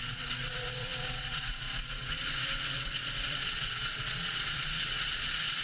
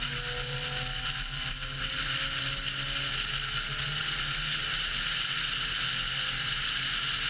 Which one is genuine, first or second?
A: second